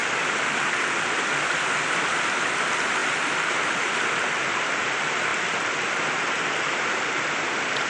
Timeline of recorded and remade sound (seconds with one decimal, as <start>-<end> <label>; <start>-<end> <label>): 0.0-7.9 recorded